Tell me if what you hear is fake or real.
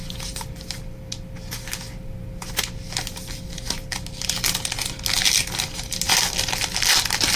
real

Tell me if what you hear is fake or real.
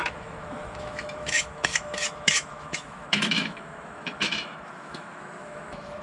fake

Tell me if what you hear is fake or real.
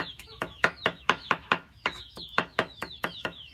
fake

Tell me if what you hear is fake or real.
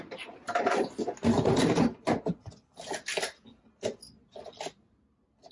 real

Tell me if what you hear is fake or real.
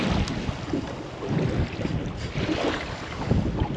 real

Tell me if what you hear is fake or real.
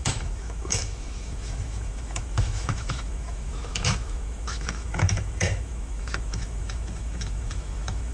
fake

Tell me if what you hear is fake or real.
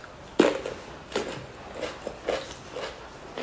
real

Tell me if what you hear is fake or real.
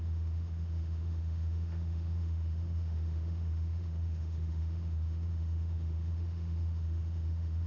fake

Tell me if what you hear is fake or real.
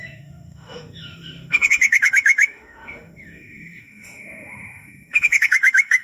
fake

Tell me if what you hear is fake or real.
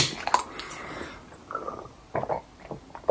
real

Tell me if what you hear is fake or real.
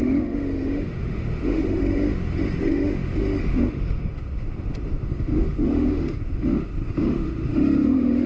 fake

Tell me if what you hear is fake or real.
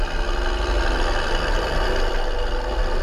real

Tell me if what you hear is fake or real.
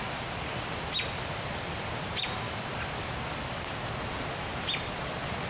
real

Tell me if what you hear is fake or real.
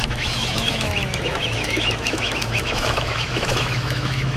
fake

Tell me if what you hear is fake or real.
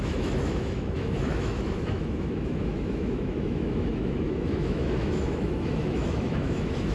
fake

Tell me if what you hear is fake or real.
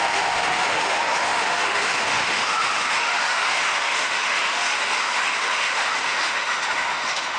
fake